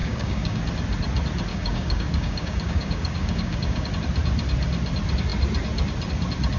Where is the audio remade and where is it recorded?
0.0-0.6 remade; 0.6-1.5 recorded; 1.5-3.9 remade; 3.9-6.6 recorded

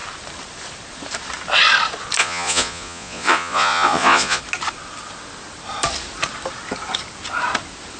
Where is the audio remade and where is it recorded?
0.0-2.2 recorded; 2.2-4.4 remade; 4.4-8.0 recorded